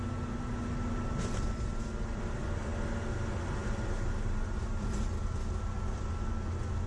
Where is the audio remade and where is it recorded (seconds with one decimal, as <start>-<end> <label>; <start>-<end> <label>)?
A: 0.0-6.9 recorded

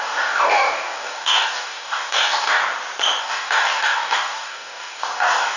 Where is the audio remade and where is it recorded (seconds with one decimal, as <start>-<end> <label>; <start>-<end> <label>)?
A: 0.0-2.6 remade; 2.6-3.2 recorded; 3.2-5.6 remade

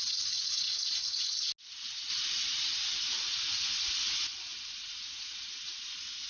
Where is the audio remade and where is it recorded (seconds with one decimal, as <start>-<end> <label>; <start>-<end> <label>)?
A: 0.0-6.3 recorded

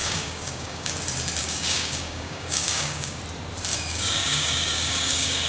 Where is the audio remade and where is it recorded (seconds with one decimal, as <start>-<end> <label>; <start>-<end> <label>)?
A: 0.0-0.9 remade; 0.9-1.4 recorded; 1.4-3.2 remade; 3.2-3.7 recorded; 3.7-5.5 remade

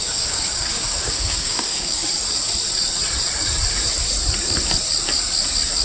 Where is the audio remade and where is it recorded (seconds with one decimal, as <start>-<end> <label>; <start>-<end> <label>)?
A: 0.0-2.0 remade; 2.0-5.8 recorded

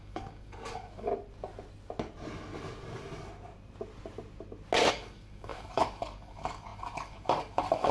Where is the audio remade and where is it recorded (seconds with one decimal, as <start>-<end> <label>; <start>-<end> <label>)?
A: 0.0-1.1 remade; 1.1-4.9 recorded; 4.9-7.9 remade

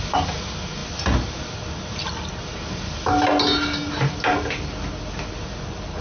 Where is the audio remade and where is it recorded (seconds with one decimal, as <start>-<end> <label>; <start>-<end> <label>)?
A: 0.0-6.0 recorded

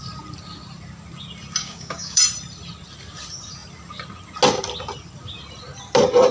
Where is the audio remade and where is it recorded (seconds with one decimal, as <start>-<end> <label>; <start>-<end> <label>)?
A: 0.0-1.6 recorded; 1.6-2.2 remade; 2.2-6.3 recorded